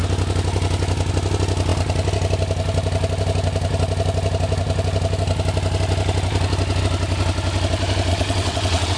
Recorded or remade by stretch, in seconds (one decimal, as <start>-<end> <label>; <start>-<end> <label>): 0.0-8.1 recorded; 8.1-9.0 remade